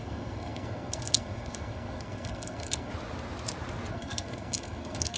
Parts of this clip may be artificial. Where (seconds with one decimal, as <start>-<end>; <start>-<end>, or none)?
0.0-2.9; 3.9-5.2

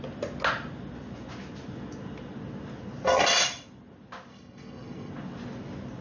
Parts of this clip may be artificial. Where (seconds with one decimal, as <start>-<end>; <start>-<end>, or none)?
4.3-5.1

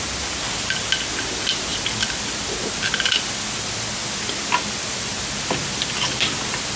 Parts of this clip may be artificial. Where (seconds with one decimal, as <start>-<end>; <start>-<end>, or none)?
none

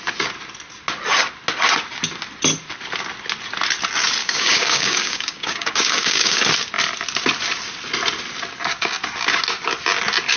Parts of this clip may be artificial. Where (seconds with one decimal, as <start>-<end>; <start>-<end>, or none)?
4.2-6.4

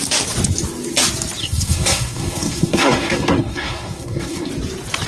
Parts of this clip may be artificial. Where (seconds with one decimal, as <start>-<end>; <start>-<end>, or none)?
1.4-4.5

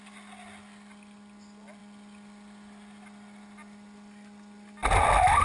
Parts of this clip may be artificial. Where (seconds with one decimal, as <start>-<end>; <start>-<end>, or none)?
none